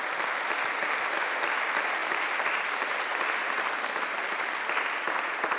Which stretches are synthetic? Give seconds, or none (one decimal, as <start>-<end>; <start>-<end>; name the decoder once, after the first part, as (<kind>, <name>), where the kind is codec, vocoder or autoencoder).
none